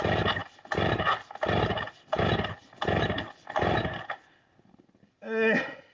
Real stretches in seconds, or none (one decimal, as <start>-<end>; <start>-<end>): 0.0-5.9